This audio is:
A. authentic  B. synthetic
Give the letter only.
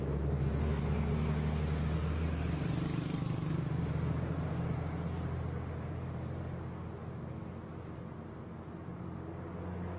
A